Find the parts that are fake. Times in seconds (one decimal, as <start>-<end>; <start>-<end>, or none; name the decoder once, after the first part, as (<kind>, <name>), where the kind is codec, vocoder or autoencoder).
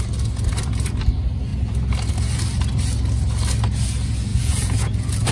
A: 4.3-5.3 (vocoder, Vocos)